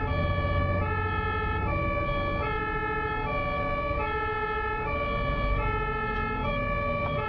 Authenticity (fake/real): real